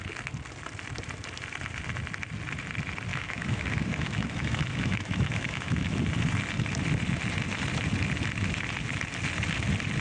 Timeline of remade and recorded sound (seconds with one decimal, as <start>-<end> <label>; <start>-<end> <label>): 0.0-3.1 recorded; 3.1-6.0 remade; 6.0-10.0 recorded